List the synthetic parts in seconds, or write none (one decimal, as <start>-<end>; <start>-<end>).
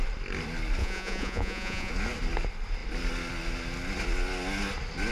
0.8-1.9